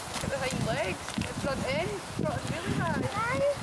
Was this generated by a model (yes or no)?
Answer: no